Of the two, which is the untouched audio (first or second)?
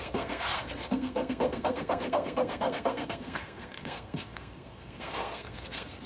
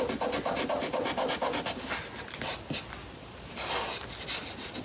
second